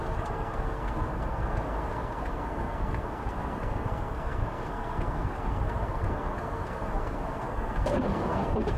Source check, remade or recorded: remade